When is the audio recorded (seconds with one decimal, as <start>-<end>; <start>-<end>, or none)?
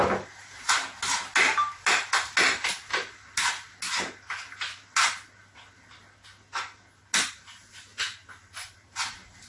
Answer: 0.0-9.5